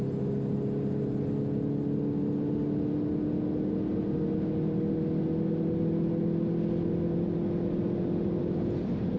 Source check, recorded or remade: recorded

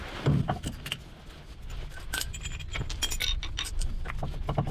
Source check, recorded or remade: recorded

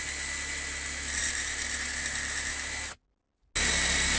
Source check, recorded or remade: recorded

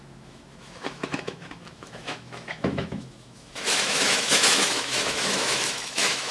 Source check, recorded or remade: remade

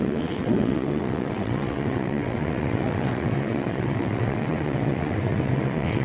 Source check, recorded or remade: remade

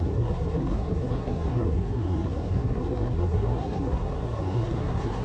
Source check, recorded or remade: remade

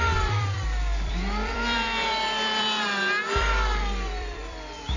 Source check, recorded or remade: remade